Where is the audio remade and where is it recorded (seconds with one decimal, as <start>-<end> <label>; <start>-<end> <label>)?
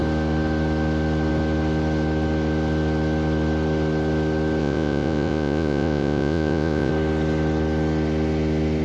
0.0-4.6 recorded; 4.6-6.9 remade; 6.9-8.8 recorded